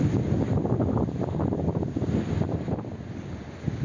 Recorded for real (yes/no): yes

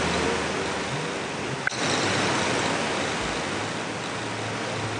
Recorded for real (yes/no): yes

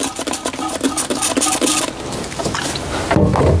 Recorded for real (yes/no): yes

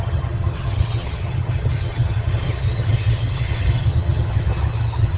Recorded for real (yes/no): no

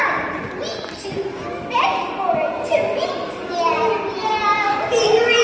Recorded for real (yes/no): yes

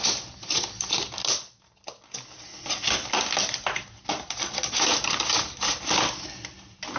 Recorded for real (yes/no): yes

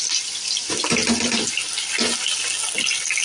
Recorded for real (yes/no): yes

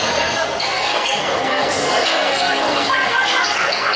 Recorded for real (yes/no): no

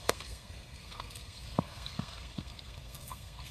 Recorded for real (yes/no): no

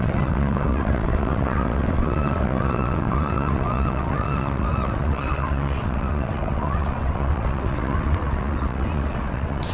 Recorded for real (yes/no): no